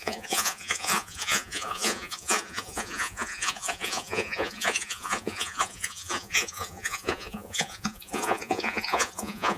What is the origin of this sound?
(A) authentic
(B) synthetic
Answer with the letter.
B